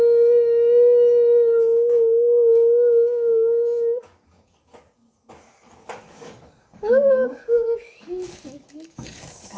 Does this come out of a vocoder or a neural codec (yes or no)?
yes